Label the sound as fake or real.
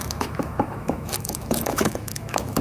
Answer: fake